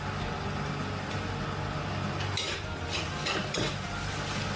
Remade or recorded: recorded